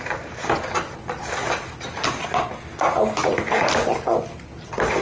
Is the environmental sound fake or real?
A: real